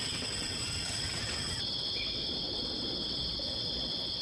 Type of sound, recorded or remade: remade